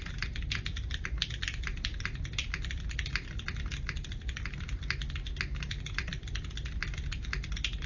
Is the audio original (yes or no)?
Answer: yes